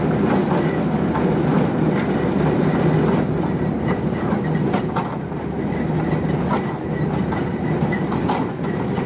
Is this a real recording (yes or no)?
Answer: yes